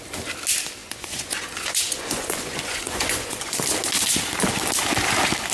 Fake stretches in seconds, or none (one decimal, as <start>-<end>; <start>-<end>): 0.8-3.6